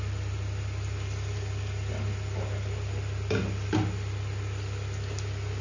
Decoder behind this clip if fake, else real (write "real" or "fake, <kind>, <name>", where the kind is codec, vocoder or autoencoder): real